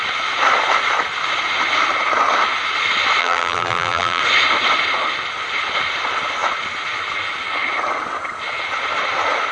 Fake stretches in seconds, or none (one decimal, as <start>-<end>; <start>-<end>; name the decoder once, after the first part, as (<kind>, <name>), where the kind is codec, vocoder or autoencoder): 3.2-4.2 (vocoder, BigVGAN v2)